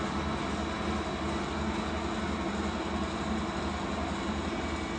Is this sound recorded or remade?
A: recorded